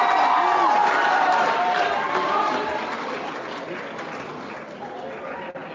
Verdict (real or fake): real